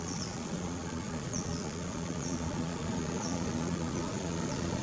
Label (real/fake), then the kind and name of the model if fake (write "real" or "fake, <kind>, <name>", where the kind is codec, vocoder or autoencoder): fake, vocoder, Vocos